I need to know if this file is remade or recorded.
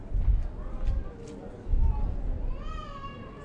recorded